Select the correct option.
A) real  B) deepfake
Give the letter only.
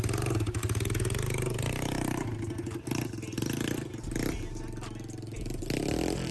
A